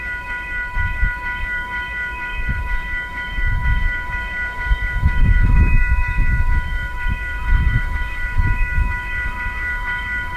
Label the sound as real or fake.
fake